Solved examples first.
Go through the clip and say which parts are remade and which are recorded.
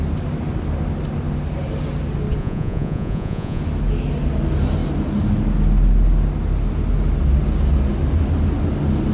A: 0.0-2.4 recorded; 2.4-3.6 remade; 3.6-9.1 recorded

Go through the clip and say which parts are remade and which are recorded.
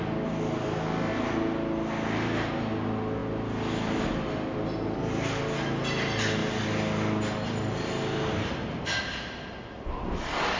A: 0.0-10.6 recorded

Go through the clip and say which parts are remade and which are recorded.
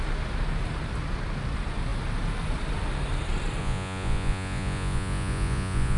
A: 0.0-3.6 recorded; 3.6-6.0 remade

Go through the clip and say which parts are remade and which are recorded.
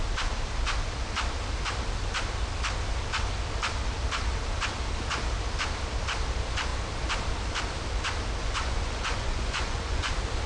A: 0.0-8.4 recorded; 8.4-10.1 remade; 10.1-10.5 recorded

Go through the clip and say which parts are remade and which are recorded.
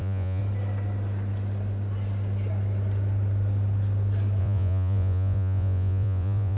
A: 0.0-0.4 remade; 0.4-4.4 recorded; 4.4-6.6 remade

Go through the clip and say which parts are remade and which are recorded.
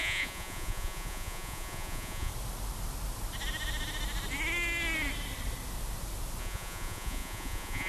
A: 0.0-2.3 remade; 2.3-6.4 recorded; 6.4-7.9 remade